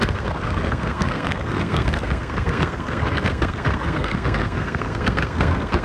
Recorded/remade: remade